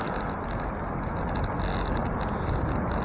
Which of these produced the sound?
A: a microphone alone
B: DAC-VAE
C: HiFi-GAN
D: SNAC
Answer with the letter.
A